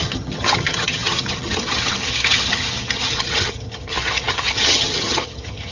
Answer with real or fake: fake